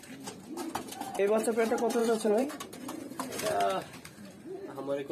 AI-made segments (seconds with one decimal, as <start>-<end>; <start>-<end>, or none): 2.0-3.4